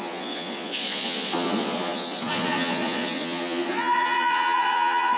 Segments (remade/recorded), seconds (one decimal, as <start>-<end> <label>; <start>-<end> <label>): 0.0-5.2 remade